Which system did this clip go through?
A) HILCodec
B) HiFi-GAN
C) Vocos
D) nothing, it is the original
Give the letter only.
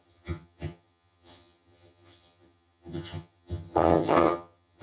B